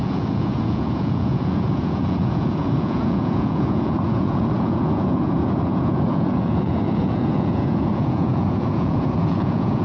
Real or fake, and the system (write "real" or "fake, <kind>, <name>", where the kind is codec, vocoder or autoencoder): fake, vocoder, Vocos